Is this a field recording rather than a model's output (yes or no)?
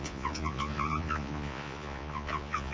no